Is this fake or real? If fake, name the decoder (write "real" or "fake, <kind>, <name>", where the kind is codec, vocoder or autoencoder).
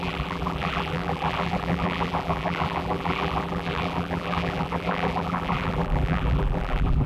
fake, vocoder, BigVGAN v2